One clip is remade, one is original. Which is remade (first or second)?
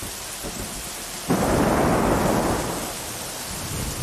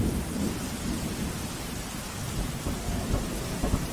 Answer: second